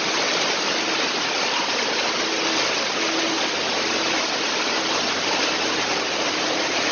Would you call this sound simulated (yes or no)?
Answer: no